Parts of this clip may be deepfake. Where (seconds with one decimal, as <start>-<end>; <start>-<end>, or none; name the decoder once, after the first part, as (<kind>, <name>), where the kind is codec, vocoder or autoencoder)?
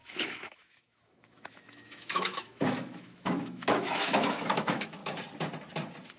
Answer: 0.0-5.0 (autoencoder, DAC-VAE)